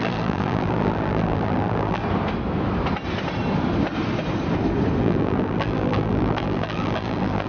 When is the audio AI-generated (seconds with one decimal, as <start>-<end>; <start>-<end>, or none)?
0.0-2.0; 5.0-7.5